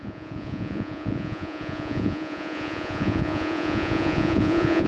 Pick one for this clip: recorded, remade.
remade